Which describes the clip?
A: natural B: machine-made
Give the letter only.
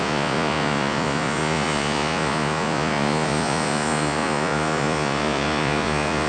B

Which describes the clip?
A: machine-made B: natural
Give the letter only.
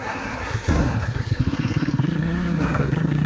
A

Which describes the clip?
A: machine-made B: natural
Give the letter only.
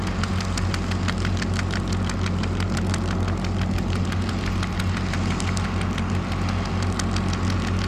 B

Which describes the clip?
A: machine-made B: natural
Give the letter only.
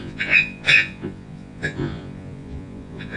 A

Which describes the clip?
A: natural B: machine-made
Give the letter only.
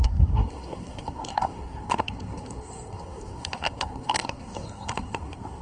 B